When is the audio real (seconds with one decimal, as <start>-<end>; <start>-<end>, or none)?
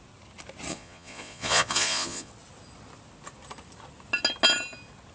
0.0-0.7; 2.3-5.1